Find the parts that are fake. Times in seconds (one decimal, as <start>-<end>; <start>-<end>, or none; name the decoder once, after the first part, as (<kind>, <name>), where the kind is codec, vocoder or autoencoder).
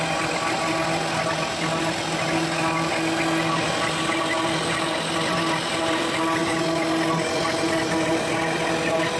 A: none